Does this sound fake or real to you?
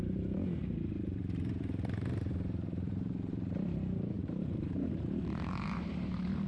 fake